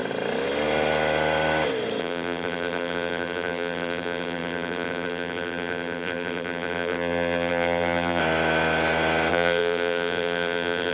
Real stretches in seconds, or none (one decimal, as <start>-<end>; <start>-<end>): 0.0-2.0; 8.2-9.3